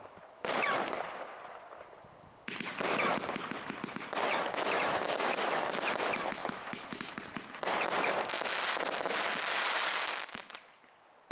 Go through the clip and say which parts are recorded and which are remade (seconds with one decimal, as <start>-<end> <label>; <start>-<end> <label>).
0.0-4.3 recorded; 4.3-5.9 remade; 5.9-6.4 recorded; 6.4-7.0 remade; 7.0-11.3 recorded

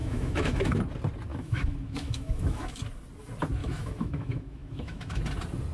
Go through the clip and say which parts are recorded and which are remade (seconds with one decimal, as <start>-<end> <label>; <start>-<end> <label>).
0.0-0.8 remade; 0.8-1.3 recorded; 1.3-2.8 remade; 2.8-3.6 recorded; 3.6-5.2 remade; 5.2-5.7 recorded

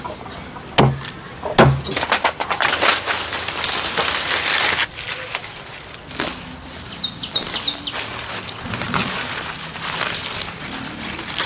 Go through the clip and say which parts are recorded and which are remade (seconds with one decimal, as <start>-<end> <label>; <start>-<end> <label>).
0.0-11.5 recorded

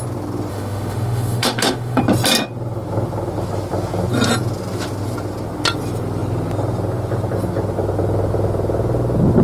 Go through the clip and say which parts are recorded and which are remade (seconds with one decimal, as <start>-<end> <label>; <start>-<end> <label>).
0.0-0.5 recorded; 0.5-2.0 remade; 2.0-9.4 recorded

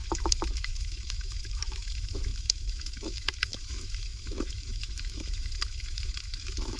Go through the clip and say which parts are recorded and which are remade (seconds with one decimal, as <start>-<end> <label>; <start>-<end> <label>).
0.0-6.8 remade